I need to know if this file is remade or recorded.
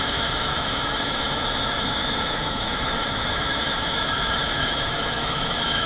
remade